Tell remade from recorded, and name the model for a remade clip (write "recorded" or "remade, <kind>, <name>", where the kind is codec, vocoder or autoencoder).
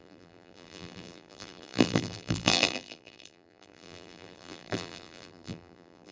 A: remade, vocoder, BigVGAN v2